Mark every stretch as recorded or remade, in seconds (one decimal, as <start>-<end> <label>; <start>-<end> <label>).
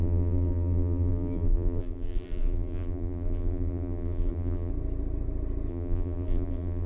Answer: 0.0-4.7 remade; 4.7-5.7 recorded; 5.7-6.9 remade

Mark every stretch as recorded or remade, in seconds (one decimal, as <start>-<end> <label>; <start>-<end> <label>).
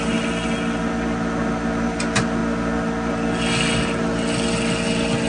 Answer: 0.0-5.3 recorded